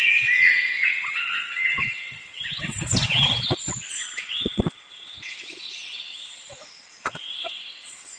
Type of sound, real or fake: fake